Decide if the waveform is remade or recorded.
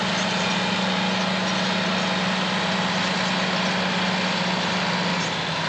recorded